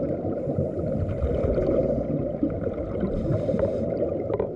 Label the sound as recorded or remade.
recorded